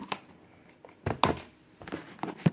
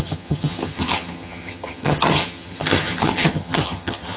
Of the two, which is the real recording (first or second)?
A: first